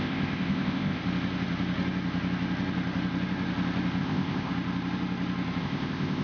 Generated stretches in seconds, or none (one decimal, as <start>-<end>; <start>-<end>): 0.0-1.0; 4.0-4.5; 5.6-6.2